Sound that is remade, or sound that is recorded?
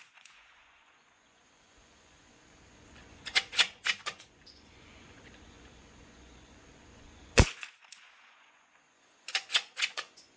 remade